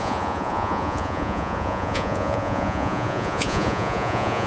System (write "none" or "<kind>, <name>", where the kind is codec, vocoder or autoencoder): vocoder, Vocos